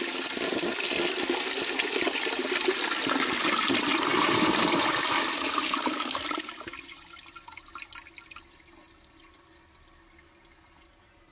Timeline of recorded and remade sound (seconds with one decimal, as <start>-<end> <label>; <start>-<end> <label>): 0.0-11.3 recorded